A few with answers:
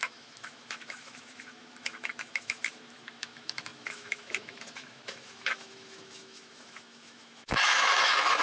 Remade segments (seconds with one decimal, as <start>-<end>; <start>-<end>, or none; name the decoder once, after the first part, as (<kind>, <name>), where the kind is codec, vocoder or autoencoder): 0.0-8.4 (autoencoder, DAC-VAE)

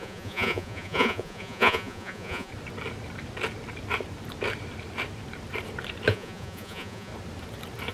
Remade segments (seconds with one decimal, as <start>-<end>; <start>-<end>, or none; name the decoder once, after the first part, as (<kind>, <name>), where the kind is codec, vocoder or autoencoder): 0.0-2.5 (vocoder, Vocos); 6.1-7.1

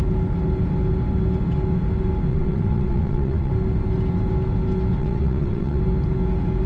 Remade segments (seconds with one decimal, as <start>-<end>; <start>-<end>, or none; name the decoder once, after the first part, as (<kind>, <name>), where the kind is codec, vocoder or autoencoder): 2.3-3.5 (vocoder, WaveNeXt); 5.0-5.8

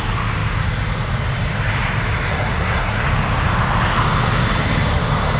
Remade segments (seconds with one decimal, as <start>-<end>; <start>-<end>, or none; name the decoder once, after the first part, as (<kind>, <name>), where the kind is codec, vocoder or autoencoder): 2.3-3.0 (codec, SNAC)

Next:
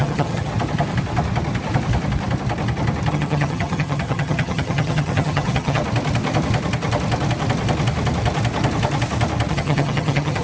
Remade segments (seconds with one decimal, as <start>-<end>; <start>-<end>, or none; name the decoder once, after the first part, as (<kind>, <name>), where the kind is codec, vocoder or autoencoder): 0.0-0.5 (vocoder, HiFi-GAN); 3.1-5.8; 9.5-10.4